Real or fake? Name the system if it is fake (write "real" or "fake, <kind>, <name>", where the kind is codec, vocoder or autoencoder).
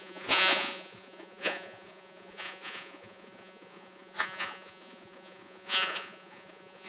fake, vocoder, Vocos